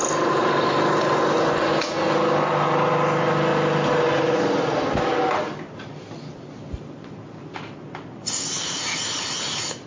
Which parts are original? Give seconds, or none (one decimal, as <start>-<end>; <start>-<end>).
0.0-9.9